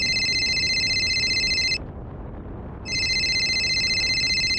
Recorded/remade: recorded